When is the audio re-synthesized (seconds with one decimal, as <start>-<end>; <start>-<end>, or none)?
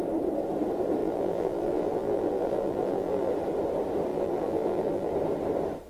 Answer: 1.0-3.3; 4.1-5.1